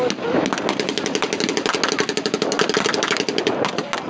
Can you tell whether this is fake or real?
real